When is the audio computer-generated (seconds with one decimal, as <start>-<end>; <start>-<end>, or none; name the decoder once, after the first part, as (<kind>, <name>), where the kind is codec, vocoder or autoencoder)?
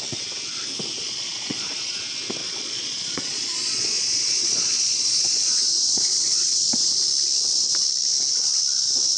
1.0-2.0 (vocoder, Vocos); 2.4-6.9